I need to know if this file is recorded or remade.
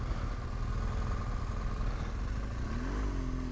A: recorded